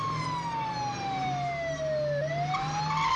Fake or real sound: real